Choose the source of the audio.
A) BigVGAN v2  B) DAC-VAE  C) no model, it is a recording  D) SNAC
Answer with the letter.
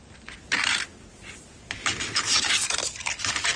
C